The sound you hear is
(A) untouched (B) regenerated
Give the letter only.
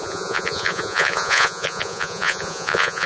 B